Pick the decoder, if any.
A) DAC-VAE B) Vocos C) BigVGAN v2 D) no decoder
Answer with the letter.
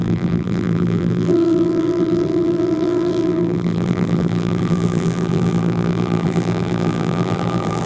C